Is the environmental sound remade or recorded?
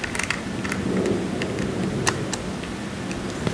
recorded